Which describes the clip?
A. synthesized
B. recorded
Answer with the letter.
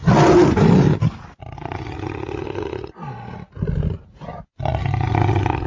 B